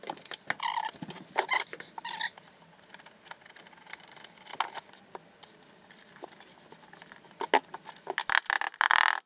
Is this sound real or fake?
real